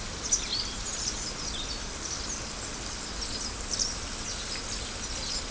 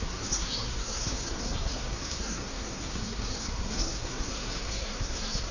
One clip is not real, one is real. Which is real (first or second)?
first